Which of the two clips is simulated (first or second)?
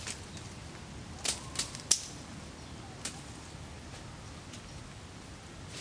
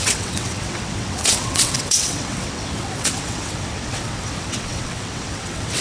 second